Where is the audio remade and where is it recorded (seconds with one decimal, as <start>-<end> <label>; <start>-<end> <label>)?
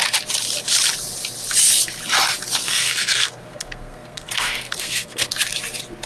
0.0-2.6 recorded; 2.6-5.4 remade; 5.4-6.1 recorded